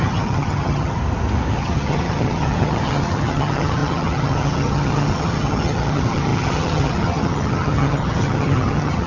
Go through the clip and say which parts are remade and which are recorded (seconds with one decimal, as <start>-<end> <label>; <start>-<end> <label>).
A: 0.0-1.0 remade; 1.0-1.5 recorded; 1.5-9.1 remade